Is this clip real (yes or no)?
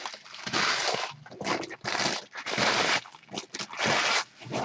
yes